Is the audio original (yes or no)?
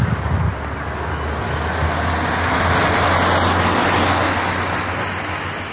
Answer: yes